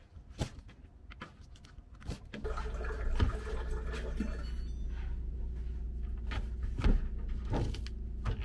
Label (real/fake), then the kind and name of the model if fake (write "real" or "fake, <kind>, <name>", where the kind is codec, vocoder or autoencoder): real